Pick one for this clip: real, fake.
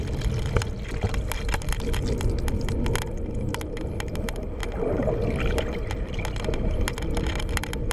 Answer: real